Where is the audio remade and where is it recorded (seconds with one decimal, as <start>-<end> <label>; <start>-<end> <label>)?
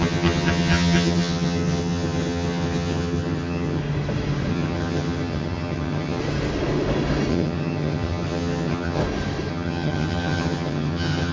0.0-3.8 remade; 3.8-4.5 recorded; 4.5-6.2 remade; 6.2-7.3 recorded; 7.3-9.0 remade; 9.0-9.5 recorded; 9.5-11.3 remade